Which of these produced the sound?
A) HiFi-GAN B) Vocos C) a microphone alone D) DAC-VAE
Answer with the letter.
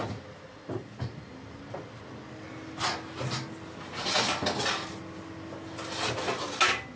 C